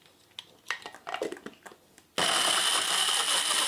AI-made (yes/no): no